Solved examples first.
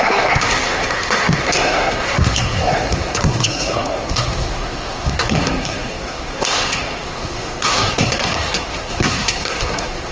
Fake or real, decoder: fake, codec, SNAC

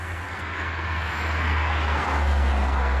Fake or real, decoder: fake, codec, SNAC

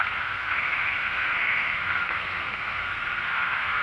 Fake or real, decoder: fake, codec, SNAC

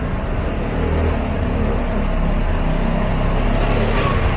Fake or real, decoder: real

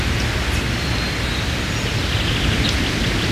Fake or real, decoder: real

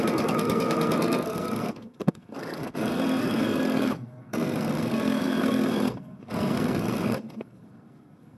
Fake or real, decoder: fake, codec, SNAC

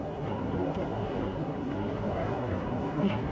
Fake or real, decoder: fake, codec, SNAC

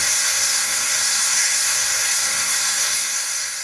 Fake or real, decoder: fake, codec, SNAC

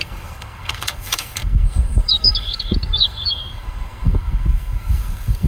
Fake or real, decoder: fake, codec, SNAC